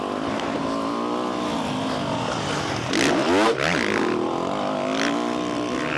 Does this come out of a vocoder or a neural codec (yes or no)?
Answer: no